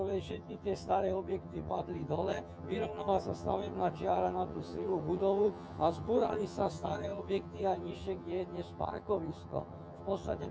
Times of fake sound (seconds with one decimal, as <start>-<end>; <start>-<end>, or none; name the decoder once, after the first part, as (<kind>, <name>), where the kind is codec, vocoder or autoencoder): 0.0-10.5 (vocoder, HiFi-GAN)